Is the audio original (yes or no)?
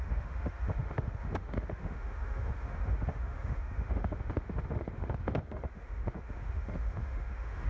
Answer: no